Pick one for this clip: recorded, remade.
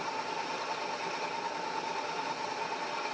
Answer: recorded